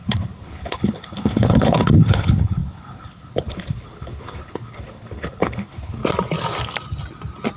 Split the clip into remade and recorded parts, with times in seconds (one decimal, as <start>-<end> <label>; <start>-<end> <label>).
0.0-6.0 remade; 6.0-7.6 recorded